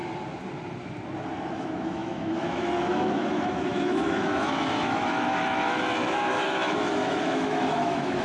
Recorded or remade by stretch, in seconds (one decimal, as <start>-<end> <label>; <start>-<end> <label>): 0.0-1.5 recorded; 1.5-8.2 remade